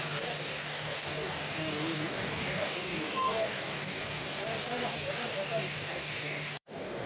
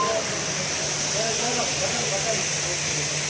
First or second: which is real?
second